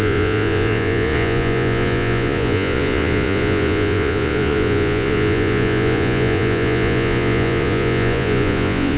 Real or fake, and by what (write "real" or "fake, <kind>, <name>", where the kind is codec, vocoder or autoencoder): fake, vocoder, Vocos